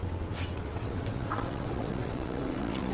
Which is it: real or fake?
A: fake